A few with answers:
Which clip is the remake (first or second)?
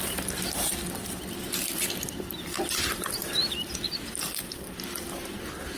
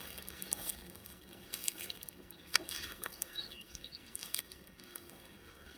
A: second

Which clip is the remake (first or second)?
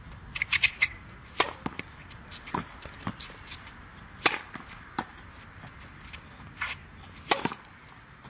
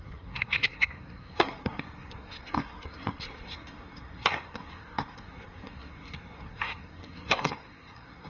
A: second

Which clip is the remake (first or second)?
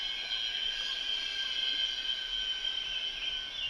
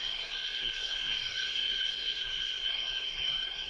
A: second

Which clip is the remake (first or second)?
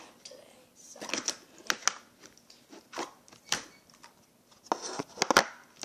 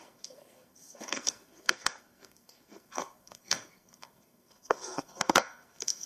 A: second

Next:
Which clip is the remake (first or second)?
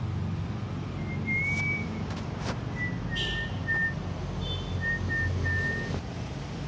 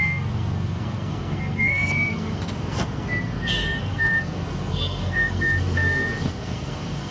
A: second